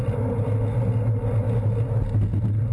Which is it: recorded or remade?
recorded